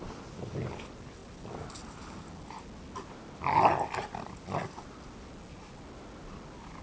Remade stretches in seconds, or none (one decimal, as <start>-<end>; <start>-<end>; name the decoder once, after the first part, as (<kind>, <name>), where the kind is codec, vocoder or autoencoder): none